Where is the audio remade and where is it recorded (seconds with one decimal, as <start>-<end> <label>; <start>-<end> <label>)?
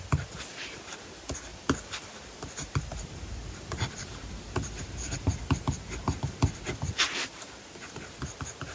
0.0-1.5 recorded; 1.5-5.4 remade; 5.4-8.7 recorded